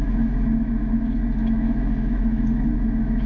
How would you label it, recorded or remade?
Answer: remade